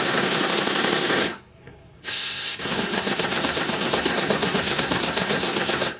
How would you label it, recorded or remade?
remade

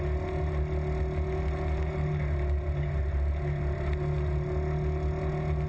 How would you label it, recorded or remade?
recorded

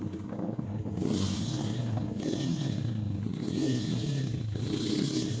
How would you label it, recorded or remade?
remade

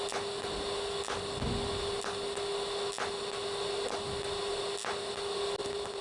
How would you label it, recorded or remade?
recorded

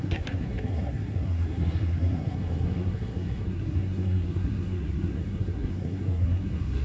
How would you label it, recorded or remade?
remade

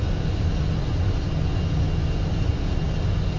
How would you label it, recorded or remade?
recorded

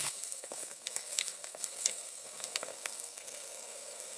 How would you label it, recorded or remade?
remade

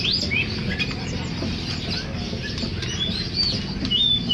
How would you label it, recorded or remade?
recorded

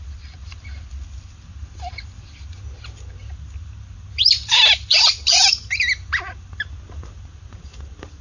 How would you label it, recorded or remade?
recorded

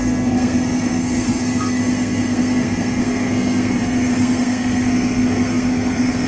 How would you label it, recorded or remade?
remade